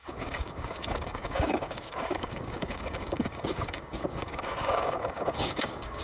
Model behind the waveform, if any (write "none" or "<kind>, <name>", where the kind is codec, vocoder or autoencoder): codec, DAC